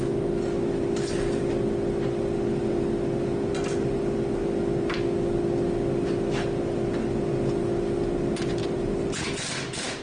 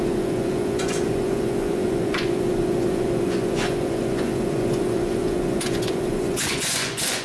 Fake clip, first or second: second